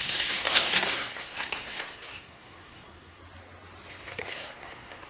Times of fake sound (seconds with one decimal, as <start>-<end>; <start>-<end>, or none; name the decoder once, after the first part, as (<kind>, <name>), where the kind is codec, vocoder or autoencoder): 0.0-3.2 (codec, SNAC); 3.9-5.1